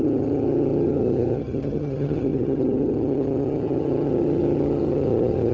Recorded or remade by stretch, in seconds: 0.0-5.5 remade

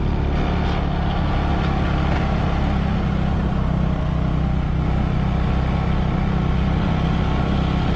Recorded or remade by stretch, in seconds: 0.0-8.0 recorded

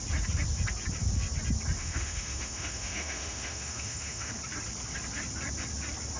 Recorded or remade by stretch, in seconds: 0.0-1.8 recorded; 1.8-4.3 remade; 4.3-6.2 recorded

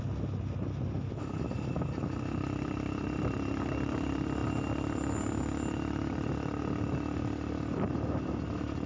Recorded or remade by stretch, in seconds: 0.0-8.9 recorded